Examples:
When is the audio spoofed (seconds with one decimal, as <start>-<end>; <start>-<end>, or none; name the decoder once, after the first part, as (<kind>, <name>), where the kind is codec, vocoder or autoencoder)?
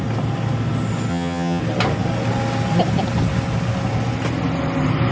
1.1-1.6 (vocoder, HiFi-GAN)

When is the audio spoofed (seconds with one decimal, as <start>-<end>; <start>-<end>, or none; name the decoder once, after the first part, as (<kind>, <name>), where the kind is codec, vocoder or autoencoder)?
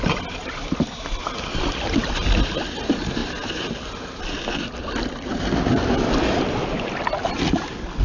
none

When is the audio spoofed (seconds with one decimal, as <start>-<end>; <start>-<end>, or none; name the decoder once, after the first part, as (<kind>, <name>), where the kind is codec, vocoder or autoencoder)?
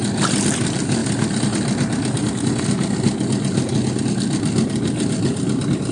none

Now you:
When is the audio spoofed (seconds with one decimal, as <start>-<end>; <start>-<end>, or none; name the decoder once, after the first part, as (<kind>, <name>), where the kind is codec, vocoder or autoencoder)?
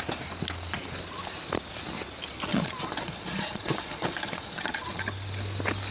2.5-5.0 (vocoder, Vocos)